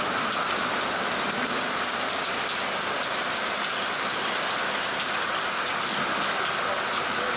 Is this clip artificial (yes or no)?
no